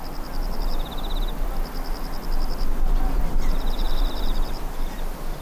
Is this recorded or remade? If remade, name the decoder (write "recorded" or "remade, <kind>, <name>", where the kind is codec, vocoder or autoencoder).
recorded